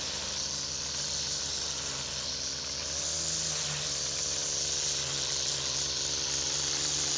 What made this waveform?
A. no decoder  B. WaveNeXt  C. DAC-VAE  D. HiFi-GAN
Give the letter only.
A